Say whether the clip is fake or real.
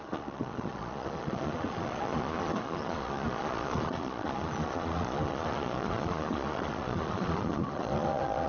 fake